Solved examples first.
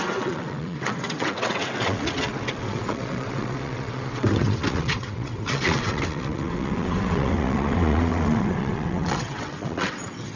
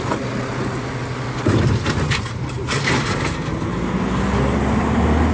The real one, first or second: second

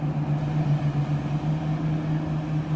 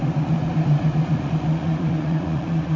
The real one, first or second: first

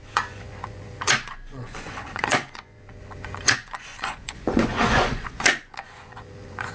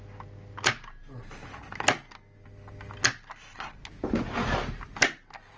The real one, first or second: second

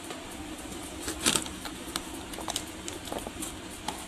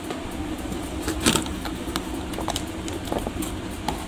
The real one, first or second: second